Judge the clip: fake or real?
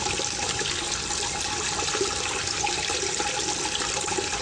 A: real